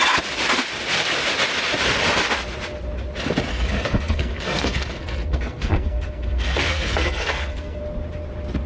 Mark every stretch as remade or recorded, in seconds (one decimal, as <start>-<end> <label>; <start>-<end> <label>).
0.0-3.5 recorded; 3.5-7.8 remade; 7.8-8.7 recorded